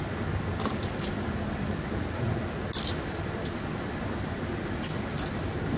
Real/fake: real